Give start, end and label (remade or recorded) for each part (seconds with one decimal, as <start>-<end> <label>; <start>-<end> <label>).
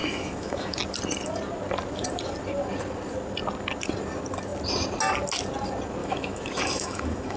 0.0-0.8 remade; 0.8-6.0 recorded; 6.0-7.4 remade